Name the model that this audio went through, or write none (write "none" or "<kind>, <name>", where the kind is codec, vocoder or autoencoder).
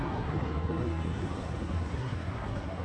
codec, SNAC